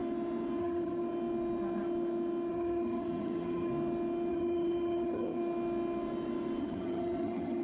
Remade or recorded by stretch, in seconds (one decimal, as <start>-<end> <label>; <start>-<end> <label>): 0.0-0.6 recorded; 0.6-1.0 remade; 1.0-2.5 recorded; 2.5-3.7 remade; 3.7-4.3 recorded; 4.3-5.4 remade; 5.4-6.6 recorded; 6.6-7.6 remade